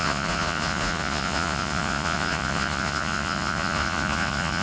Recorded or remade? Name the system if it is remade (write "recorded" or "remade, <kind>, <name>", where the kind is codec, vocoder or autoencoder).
remade, vocoder, Vocos